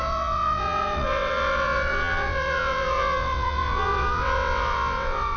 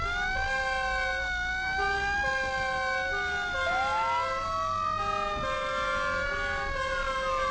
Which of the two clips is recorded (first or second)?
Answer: second